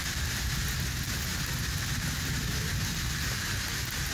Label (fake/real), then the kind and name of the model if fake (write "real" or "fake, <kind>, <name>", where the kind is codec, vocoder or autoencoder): real